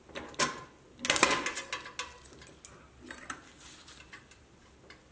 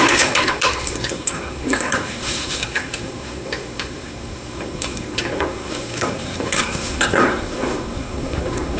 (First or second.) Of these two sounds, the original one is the first